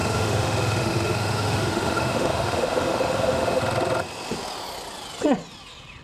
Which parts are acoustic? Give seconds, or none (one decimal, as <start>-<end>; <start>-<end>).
3.6-6.0